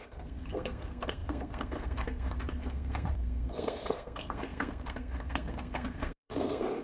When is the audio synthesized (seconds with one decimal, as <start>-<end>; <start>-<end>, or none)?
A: 0.0-6.8